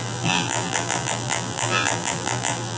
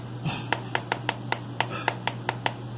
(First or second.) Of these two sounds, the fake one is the first